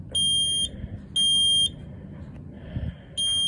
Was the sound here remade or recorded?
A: recorded